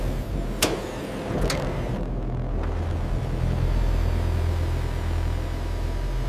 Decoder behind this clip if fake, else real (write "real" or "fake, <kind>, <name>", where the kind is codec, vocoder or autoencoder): real